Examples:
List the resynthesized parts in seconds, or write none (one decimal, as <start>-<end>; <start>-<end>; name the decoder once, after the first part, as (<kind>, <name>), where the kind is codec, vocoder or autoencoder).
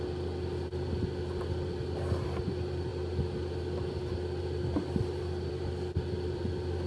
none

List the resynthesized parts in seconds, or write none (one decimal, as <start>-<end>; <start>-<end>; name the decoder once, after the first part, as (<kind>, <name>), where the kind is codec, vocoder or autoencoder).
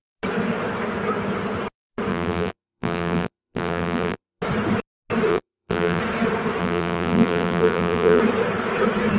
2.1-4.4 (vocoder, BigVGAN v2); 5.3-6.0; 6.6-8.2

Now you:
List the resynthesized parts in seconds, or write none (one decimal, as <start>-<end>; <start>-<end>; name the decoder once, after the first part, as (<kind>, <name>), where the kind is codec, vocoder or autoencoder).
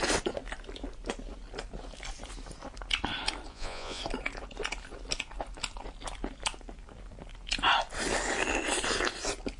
3.5-4.0 (vocoder, Vocos)